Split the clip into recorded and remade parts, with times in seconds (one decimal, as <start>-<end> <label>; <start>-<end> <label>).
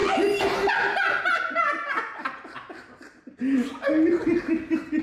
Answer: 0.0-1.2 recorded; 1.2-3.7 remade; 3.7-4.4 recorded; 4.4-5.0 remade